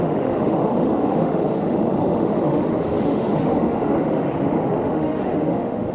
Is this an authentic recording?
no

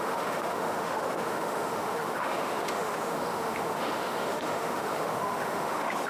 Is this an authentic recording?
no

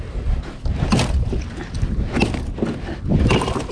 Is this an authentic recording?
yes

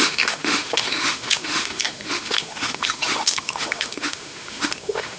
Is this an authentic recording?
no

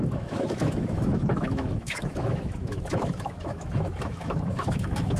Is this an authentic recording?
no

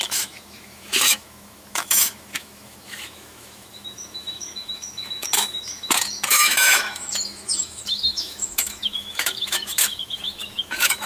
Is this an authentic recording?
no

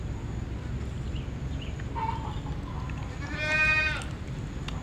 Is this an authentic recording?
yes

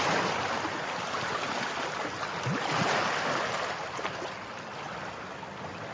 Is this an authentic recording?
yes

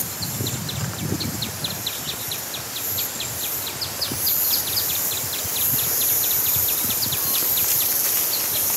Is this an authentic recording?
yes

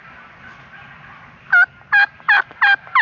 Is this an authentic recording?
yes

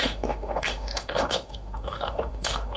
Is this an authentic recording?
no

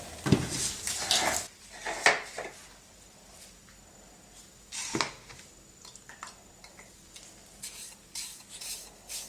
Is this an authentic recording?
yes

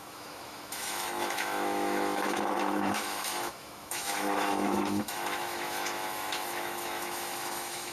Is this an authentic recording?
no